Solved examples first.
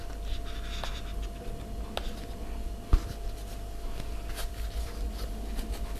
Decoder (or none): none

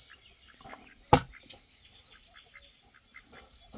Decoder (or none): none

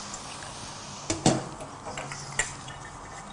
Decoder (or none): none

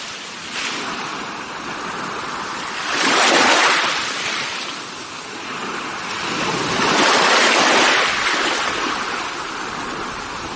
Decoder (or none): none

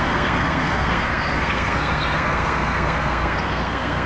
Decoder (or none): codec, SNAC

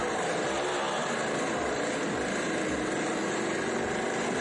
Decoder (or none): none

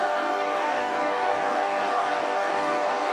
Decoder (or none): codec, DAC